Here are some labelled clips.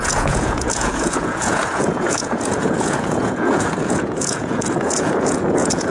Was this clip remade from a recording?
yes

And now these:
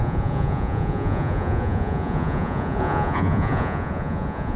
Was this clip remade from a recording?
yes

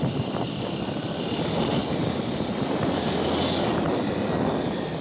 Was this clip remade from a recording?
no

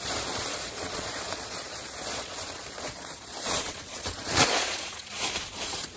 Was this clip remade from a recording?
yes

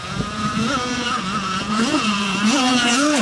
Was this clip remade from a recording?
yes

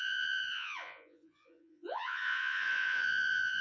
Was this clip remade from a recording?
yes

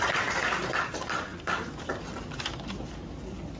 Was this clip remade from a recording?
no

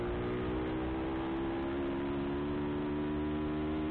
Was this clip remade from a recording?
no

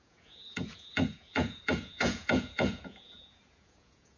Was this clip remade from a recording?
yes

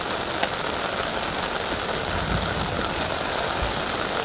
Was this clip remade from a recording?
no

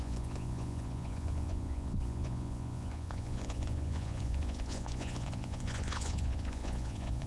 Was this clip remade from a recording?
yes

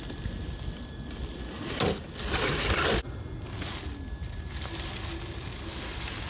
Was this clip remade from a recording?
no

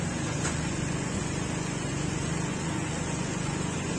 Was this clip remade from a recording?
yes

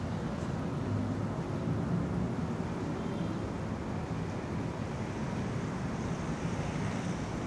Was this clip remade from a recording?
no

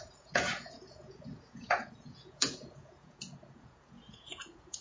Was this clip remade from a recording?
yes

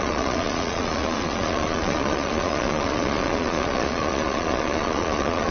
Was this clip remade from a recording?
yes